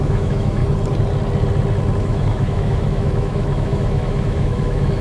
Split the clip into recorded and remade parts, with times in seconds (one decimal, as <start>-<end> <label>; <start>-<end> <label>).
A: 0.0-0.6 remade; 0.6-2.0 recorded; 2.0-5.0 remade

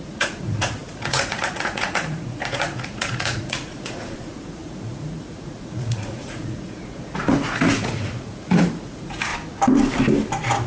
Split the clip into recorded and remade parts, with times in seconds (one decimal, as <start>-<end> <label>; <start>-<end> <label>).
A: 0.0-9.3 remade; 9.3-10.7 recorded

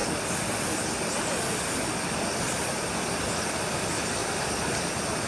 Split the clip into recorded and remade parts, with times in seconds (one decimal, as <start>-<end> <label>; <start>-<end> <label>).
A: 0.0-4.2 recorded; 4.2-4.7 remade; 4.7-5.3 recorded

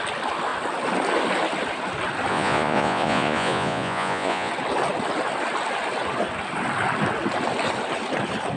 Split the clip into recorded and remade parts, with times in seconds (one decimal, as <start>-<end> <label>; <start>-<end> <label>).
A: 0.0-2.3 recorded; 2.3-4.5 remade; 4.5-8.6 recorded

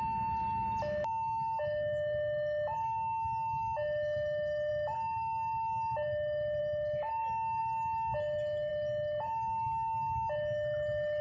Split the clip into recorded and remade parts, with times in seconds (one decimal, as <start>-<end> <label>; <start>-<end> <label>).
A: 0.0-11.2 recorded

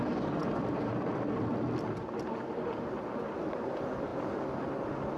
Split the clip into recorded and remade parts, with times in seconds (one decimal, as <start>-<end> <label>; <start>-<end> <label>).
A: 0.0-5.2 recorded